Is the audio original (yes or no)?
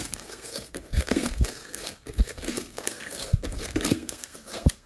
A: no